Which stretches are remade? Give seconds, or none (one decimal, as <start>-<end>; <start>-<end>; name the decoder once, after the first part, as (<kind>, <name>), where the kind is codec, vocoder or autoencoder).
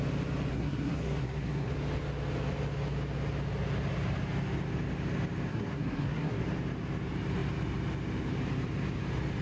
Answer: 0.5-1.7 (codec, SNAC); 5.5-6.4